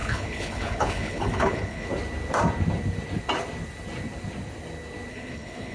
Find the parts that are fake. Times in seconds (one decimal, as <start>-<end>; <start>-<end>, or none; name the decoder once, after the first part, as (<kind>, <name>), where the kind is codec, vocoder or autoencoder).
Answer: 0.0-1.9 (codec, HILCodec); 5.1-5.7